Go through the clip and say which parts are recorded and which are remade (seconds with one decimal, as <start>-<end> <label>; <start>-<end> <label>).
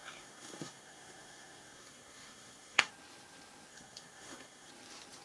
0.0-2.9 remade; 2.9-3.7 recorded; 3.7-4.7 remade; 4.7-5.2 recorded